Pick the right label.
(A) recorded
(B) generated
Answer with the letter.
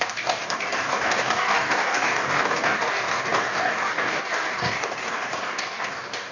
B